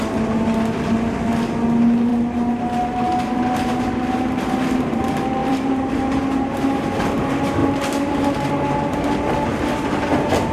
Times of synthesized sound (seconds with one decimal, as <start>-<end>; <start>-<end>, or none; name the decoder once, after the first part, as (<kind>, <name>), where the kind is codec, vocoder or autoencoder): 5.4-6.2 (vocoder, BigVGAN v2); 7.6-8.5; 9.5-10.0

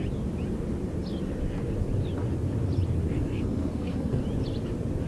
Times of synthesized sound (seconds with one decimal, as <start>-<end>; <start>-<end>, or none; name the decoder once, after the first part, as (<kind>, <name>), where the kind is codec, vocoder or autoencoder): 3.1-4.2 (codec, SNAC)

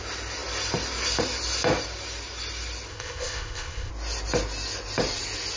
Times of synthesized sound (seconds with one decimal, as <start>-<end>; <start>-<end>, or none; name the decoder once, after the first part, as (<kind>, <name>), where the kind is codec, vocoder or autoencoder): 2.9-3.9 (codec, ZipCodec)

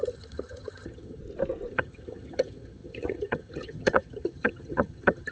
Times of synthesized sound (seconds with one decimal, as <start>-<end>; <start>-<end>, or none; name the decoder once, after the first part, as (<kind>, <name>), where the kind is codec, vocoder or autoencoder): 0.0-1.2 (vocoder, HiFi-GAN); 1.7-5.3

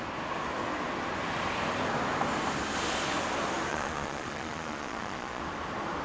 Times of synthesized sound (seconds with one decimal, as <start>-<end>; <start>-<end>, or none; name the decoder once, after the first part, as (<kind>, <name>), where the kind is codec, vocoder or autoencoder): 3.7-5.4 (vocoder, Vocos)

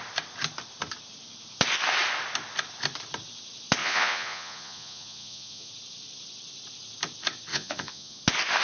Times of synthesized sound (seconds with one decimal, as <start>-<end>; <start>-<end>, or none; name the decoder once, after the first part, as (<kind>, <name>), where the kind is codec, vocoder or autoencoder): 3.8-5.7 (vocoder, Vocos); 7.5-8.2